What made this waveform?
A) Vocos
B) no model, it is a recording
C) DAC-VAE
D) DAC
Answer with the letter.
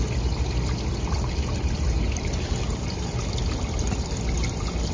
B